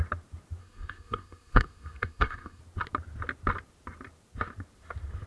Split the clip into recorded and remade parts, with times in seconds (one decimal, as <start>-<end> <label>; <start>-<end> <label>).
0.0-0.6 recorded; 0.6-2.6 remade; 2.6-5.3 recorded